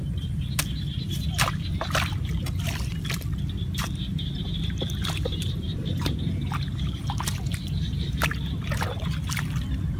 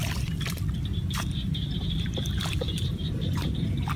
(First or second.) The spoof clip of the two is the second